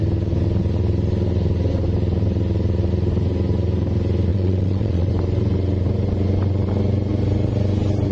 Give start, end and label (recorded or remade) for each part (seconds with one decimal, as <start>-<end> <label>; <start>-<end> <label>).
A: 0.0-4.3 recorded; 4.3-5.1 remade; 5.1-8.1 recorded